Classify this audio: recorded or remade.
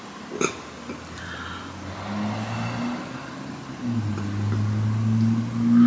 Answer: recorded